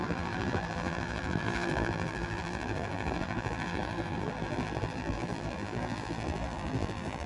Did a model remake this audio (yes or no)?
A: yes